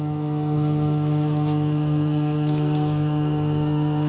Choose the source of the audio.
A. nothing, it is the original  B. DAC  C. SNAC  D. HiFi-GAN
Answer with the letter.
C